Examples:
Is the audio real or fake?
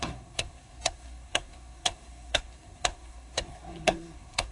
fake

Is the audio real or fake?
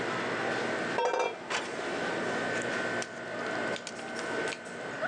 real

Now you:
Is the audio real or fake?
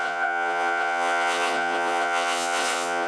fake